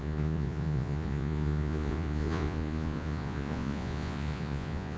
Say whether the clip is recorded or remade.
remade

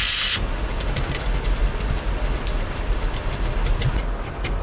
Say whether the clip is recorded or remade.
recorded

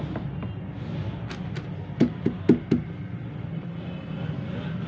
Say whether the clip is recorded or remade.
recorded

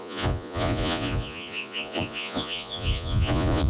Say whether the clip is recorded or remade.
remade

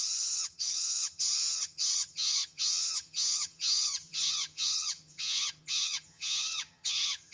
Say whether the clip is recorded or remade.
remade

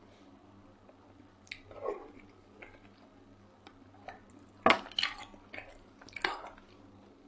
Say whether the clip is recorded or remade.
recorded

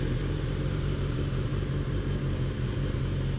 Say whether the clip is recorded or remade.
remade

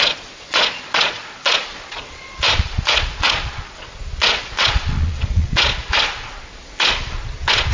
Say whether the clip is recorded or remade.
remade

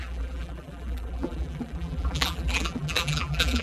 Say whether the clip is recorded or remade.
remade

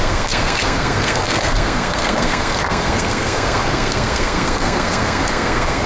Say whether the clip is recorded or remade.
remade